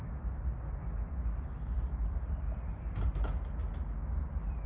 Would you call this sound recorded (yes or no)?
yes